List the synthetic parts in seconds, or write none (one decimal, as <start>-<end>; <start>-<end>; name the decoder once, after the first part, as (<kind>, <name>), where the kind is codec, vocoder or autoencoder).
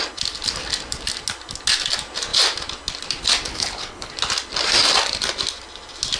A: 3.5-4.1 (codec, HILCodec)